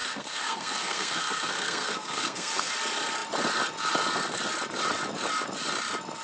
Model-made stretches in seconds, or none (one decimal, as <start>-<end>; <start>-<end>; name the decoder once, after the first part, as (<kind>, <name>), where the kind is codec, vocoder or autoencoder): 0.0-2.7 (codec, SNAC)